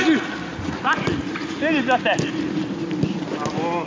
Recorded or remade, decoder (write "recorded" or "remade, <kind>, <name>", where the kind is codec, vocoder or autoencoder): recorded